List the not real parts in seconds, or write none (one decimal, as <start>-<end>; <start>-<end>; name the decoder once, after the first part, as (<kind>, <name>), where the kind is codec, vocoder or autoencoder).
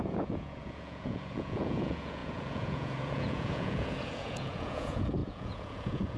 0.0-6.2 (vocoder, Vocos)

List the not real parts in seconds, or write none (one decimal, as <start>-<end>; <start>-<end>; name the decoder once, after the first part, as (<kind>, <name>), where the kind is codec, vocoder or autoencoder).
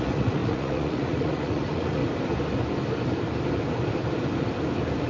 0.0-2.0 (vocoder, Vocos)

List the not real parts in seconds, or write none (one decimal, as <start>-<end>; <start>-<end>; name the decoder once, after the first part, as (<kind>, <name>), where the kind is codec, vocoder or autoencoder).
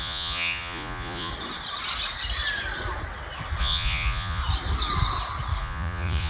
0.0-1.3 (vocoder, Vocos); 3.6-4.4; 5.6-6.3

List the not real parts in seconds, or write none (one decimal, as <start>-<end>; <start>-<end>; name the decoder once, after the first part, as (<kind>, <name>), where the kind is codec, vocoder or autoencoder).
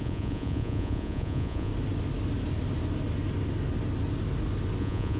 0.0-1.7 (vocoder, Vocos); 4.8-5.2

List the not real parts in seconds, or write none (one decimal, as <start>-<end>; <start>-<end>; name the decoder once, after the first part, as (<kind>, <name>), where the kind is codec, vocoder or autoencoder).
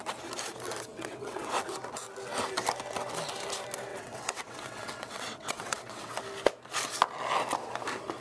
0.9-1.5 (vocoder, WaveNeXt); 3.9-6.1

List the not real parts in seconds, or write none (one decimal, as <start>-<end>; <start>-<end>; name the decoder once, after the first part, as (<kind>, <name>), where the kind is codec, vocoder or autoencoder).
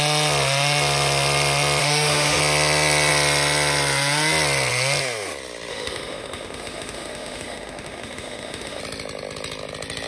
1.8-2.4 (autoencoder, DAC-VAE); 5.7-8.8